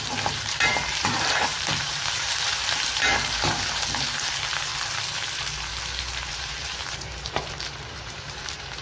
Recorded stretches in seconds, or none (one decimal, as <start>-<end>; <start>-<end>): 4.7-5.3; 5.7-6.3